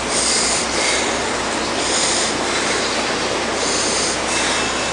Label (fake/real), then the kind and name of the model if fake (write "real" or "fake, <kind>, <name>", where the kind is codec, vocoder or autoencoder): real